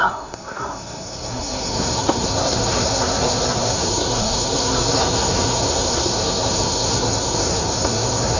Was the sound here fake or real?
fake